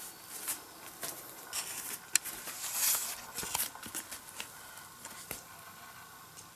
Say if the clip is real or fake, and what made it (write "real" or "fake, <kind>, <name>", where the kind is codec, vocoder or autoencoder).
real